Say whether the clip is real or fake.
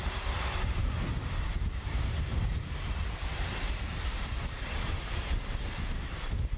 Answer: fake